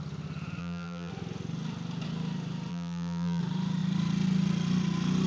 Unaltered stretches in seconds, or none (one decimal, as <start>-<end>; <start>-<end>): 0.0-0.6; 1.1-2.7; 3.4-5.3